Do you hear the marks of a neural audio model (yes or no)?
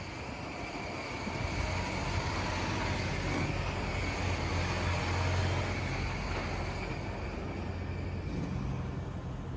no